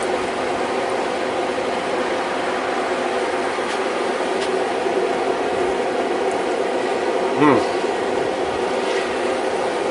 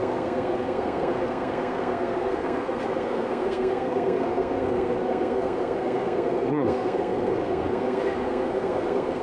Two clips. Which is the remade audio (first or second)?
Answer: second